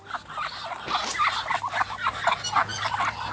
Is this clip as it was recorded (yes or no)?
yes